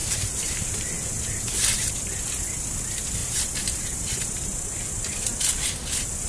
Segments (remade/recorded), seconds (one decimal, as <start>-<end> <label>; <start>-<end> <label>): 0.0-1.9 remade; 1.9-3.2 recorded; 3.2-4.2 remade; 4.2-6.3 recorded